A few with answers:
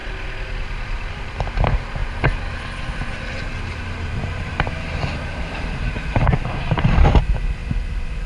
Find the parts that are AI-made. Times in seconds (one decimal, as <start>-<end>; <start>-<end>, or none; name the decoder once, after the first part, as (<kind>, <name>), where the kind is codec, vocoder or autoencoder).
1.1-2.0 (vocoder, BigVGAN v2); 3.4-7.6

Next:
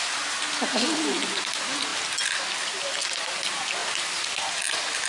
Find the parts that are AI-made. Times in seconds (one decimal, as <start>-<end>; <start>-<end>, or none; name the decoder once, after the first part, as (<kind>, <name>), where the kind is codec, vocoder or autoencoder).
none

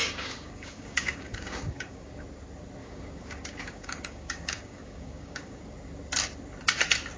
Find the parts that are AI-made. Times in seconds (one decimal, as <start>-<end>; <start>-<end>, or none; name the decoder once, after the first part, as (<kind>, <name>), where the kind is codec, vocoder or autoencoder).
0.0-2.2 (codec, DAC); 2.8-5.6

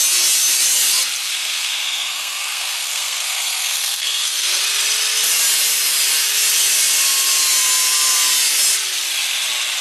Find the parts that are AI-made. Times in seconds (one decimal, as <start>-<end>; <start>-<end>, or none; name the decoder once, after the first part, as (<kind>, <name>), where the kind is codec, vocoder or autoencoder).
1.2-4.6 (codec, SNAC)